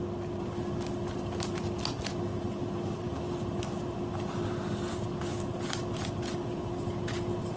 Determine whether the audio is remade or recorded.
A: recorded